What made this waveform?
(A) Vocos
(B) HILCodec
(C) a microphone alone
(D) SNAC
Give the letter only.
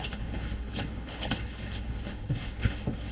B